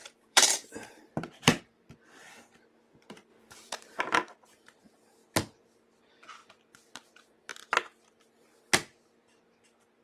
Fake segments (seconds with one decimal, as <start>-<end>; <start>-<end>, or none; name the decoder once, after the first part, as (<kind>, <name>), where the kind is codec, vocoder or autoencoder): 0.0-1.6 (vocoder, BigVGAN v2); 3.3-4.0

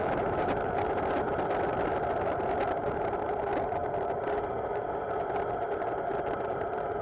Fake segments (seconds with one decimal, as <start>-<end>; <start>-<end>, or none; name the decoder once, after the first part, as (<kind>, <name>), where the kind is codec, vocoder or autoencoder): 0.0-0.8 (vocoder, BigVGAN v2); 2.8-3.4

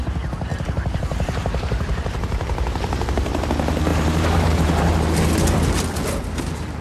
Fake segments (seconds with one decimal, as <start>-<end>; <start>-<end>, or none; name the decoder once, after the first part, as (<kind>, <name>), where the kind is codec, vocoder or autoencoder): 0.5-3.5 (vocoder, BigVGAN v2); 3.9-4.9

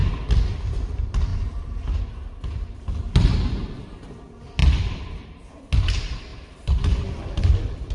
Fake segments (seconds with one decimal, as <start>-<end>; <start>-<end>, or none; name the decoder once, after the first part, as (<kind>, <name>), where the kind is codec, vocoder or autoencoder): 1.3-2.0 (vocoder, BigVGAN v2); 4.6-5.5; 6.3-7.9